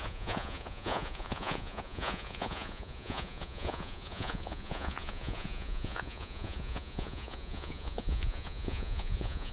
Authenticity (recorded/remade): remade